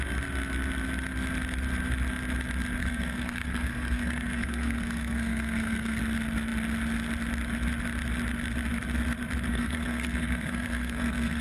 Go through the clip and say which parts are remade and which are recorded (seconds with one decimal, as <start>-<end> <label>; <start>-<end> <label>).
0.0-2.8 recorded; 2.8-6.0 remade; 6.0-9.5 recorded; 9.5-11.4 remade